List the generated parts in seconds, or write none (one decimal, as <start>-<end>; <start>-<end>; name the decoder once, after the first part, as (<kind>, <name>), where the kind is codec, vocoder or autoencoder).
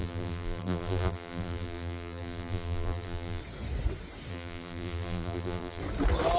0.0-3.4 (vocoder, BigVGAN v2); 4.3-5.8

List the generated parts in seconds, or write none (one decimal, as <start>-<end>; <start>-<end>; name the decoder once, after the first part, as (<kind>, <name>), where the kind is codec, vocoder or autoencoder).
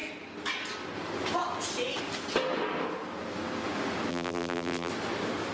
4.1-4.9 (vocoder, BigVGAN v2)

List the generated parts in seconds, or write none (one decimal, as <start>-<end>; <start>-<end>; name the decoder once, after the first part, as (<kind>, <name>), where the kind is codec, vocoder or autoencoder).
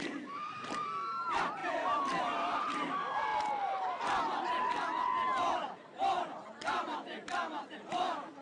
0.0-3.3 (vocoder, BigVGAN v2); 5.5-5.9; 6.4-8.4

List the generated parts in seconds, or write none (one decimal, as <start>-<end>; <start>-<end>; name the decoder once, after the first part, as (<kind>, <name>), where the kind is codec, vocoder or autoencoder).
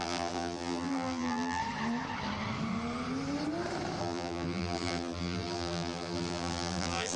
0.0-1.6 (vocoder, BigVGAN v2); 4.0-7.2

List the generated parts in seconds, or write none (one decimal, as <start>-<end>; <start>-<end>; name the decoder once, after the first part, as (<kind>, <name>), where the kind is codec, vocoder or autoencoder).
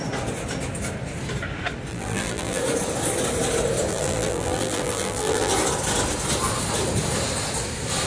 1.9-2.6 (vocoder, BigVGAN v2); 3.9-5.5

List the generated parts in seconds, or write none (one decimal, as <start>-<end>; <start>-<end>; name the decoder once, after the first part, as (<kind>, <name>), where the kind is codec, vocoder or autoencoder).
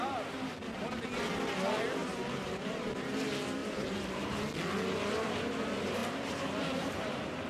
2.0-2.9 (vocoder, BigVGAN v2); 3.6-4.4; 6.0-6.9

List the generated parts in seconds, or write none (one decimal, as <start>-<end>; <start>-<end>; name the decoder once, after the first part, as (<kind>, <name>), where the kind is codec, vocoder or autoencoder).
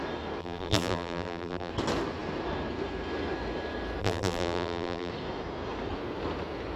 0.4-1.7 (vocoder, BigVGAN v2); 4.0-5.1